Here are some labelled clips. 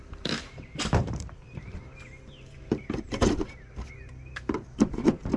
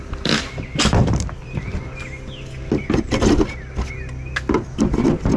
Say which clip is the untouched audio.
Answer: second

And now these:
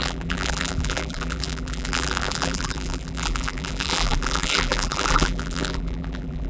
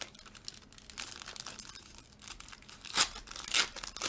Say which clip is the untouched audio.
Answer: second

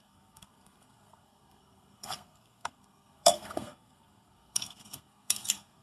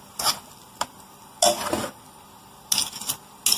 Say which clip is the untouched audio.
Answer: second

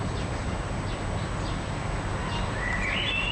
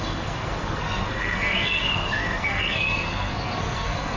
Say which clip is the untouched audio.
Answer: first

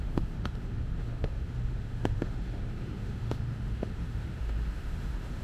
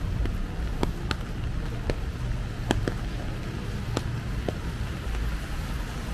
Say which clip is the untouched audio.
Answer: second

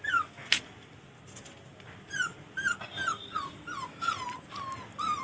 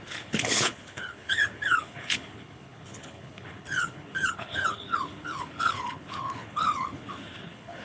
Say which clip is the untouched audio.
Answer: first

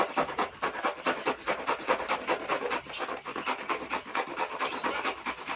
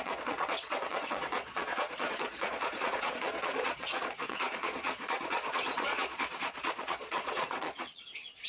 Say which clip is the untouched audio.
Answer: first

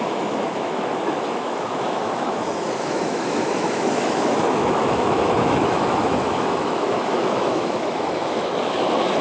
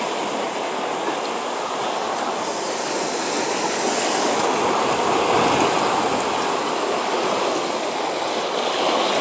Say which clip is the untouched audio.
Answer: second